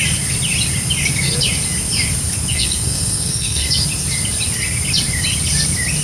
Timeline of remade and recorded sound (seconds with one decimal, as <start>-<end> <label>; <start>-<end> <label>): 0.0-2.5 recorded; 2.5-3.7 remade; 3.7-6.0 recorded